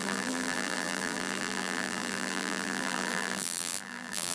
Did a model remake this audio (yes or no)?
yes